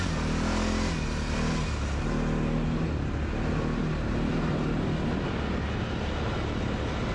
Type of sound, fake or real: real